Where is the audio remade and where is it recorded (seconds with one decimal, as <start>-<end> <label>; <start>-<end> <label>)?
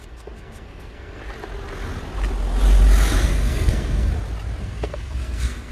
0.0-1.2 remade; 1.2-3.2 recorded; 3.2-4.1 remade; 4.1-4.6 recorded; 4.6-5.7 remade